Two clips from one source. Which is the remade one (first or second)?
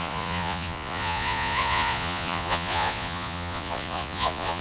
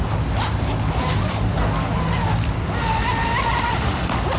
first